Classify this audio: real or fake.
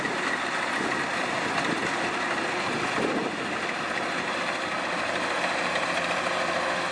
real